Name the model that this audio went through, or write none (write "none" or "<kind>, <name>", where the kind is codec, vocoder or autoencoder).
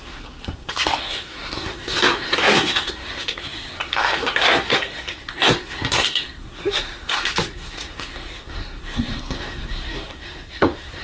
codec, SNAC